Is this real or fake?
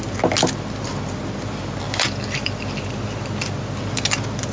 real